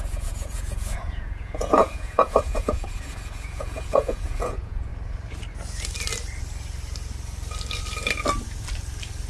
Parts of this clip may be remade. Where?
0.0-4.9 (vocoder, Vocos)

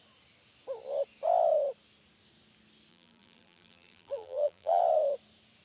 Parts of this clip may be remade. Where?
2.9-4.8 (vocoder, BigVGAN v2)

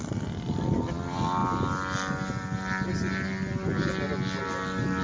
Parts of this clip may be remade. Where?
none

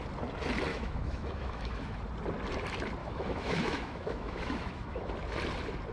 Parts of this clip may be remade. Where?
0.7-2.0 (autoencoder, DAC-VAE); 3.0-5.1

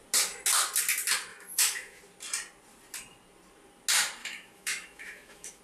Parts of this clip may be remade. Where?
1.3-2.0 (autoencoder, DAC-VAE); 4.2-5.6

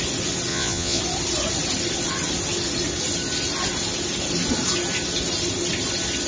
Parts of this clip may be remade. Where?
0.5-1.0 (vocoder, Vocos)